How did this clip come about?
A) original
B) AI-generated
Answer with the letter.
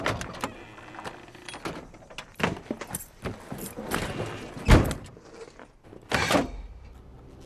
A